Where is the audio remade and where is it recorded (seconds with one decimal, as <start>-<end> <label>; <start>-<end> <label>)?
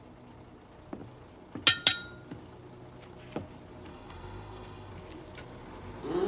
0.0-3.9 recorded; 3.9-4.9 remade; 4.9-6.3 recorded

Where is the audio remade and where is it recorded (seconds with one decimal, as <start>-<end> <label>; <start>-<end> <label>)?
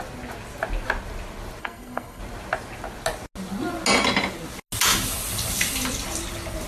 0.0-1.6 recorded; 1.6-2.2 remade; 2.2-6.7 recorded